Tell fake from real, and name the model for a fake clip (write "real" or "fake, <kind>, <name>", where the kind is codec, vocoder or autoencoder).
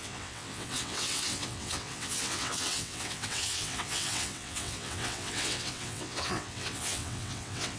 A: fake, vocoder, WaveNeXt